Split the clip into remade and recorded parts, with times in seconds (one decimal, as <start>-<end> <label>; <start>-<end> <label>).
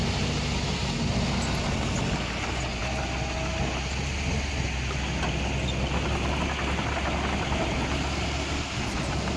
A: 0.0-9.4 recorded